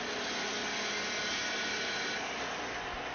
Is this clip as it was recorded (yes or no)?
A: yes